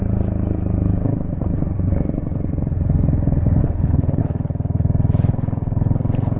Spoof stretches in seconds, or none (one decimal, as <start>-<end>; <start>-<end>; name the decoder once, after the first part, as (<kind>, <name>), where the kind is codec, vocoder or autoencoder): 3.6-4.2 (codec, HILCodec)